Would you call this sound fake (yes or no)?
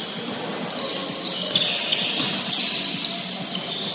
no